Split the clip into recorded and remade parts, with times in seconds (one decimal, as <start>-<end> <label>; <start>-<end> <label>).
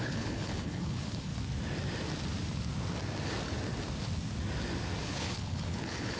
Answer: 0.0-1.3 remade; 1.3-5.0 recorded; 5.0-6.2 remade